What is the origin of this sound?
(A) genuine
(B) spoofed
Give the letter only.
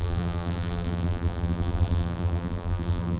B